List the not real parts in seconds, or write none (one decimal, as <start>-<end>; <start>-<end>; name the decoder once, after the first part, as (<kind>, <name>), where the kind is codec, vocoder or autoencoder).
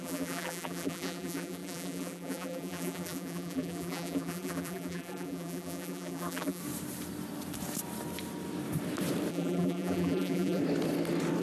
0.0-6.6 (vocoder, BigVGAN v2); 9.3-10.6